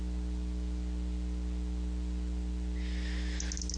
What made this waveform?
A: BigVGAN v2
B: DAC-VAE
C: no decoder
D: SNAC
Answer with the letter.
C